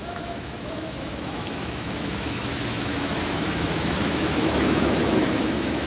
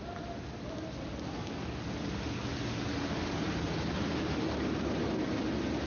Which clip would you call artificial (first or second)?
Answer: first